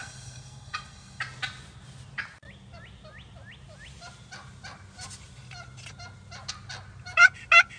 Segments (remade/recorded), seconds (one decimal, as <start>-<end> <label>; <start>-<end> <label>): 0.0-1.2 remade; 1.2-7.8 recorded